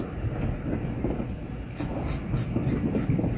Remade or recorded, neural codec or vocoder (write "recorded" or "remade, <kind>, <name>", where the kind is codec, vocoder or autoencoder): recorded